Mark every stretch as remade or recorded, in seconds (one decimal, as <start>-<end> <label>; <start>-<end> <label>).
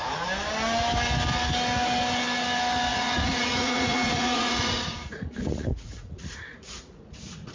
0.0-2.9 recorded; 2.9-7.5 remade